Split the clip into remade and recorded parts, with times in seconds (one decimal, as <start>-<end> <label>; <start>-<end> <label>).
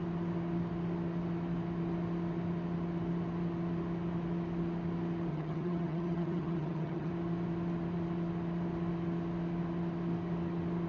0.0-5.3 recorded; 5.3-7.1 remade; 7.1-10.9 recorded